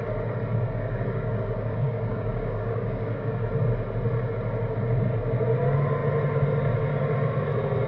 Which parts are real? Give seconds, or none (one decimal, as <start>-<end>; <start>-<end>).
0.0-0.5; 3.5-7.9